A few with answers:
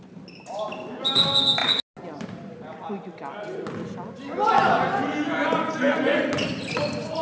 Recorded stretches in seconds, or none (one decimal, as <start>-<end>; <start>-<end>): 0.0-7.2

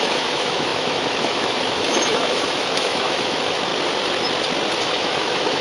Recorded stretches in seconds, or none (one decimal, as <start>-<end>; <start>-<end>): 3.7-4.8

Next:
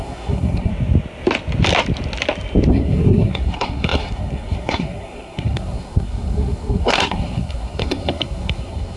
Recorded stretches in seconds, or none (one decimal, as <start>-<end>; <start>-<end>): 0.7-2.7

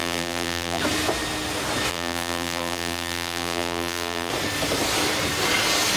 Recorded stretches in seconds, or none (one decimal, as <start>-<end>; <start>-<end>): 0.8-1.9; 4.3-6.0